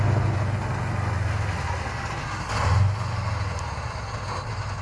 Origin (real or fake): real